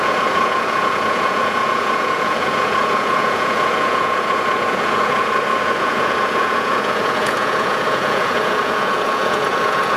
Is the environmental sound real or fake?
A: fake